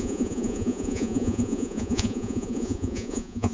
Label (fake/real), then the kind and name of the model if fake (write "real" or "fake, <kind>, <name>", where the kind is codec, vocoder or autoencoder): fake, vocoder, Vocos